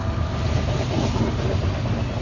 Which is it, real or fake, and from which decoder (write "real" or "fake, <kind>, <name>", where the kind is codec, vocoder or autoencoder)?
real